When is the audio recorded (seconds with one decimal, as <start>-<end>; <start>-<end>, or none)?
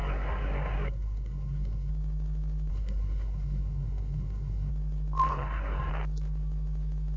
1.9-2.7; 4.7-5.3; 5.9-7.2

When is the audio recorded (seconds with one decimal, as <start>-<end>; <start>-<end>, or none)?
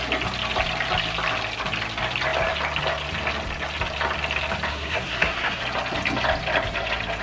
0.0-4.7; 5.6-7.2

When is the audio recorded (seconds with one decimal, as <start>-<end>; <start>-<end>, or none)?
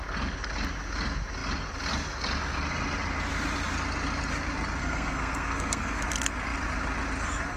0.0-4.8; 6.0-7.6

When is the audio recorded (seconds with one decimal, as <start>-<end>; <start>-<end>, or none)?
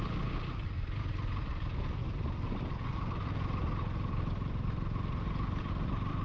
0.0-6.2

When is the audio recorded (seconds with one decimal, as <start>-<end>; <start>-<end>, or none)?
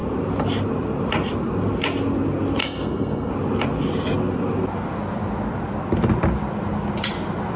0.0-2.6; 3.3-7.6